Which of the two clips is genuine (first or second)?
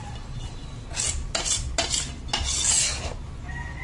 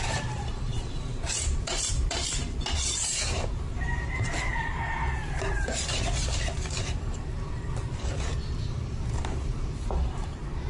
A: first